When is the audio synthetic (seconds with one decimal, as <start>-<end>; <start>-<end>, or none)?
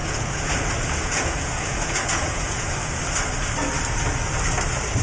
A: 0.0-3.0